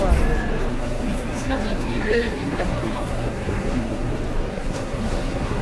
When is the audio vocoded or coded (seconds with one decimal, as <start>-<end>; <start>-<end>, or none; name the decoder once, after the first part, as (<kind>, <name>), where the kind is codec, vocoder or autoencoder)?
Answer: 0.7-4.1 (codec, SNAC); 4.5-5.6